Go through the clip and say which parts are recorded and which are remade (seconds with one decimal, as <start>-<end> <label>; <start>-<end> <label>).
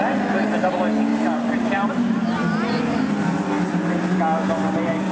0.0-1.1 recorded; 1.1-1.9 remade; 1.9-5.1 recorded